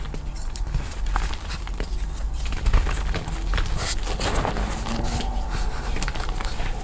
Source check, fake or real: real